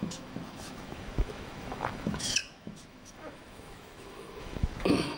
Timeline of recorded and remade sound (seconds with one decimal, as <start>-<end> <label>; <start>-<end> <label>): 0.0-5.2 remade